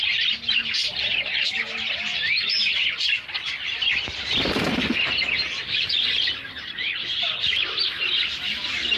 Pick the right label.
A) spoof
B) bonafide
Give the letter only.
A